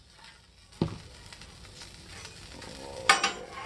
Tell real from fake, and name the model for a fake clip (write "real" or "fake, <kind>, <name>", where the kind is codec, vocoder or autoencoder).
real